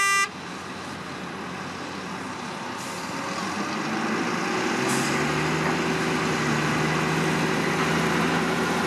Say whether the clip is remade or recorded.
recorded